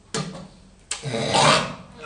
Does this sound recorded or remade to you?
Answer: recorded